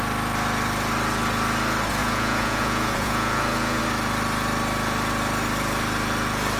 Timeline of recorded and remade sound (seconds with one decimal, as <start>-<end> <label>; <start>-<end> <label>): 0.0-2.0 recorded; 2.0-3.8 remade; 3.8-6.6 recorded